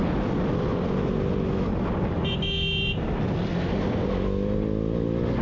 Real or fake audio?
real